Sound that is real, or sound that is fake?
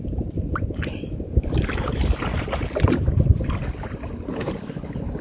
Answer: real